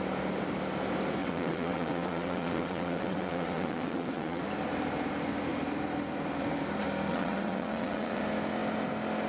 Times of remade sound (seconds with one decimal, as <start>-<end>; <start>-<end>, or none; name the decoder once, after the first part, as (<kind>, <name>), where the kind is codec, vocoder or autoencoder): 1.2-4.4 (vocoder, WaveNeXt); 7.1-8.2